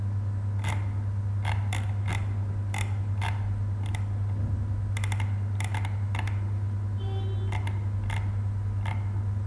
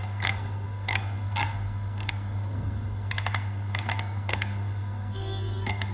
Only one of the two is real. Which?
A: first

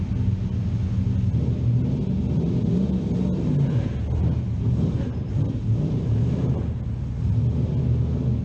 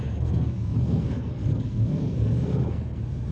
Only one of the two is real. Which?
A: first